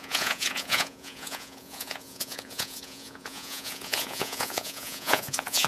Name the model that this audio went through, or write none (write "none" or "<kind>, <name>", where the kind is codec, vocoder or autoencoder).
vocoder, Vocos